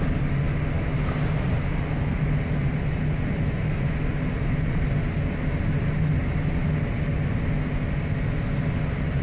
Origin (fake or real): real